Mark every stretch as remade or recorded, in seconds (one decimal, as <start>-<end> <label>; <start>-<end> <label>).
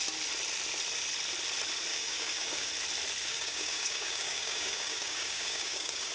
0.0-1.9 recorded; 1.9-2.7 remade; 2.7-3.3 recorded; 3.3-6.1 remade